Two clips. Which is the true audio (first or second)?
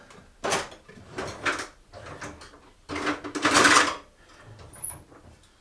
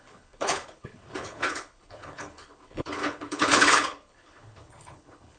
first